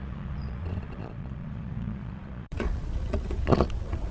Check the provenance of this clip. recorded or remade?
remade